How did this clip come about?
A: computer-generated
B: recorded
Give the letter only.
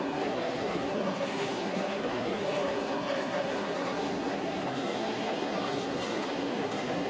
A